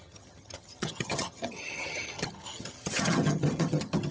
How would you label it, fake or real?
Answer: fake